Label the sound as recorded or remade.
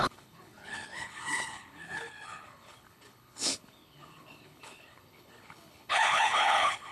remade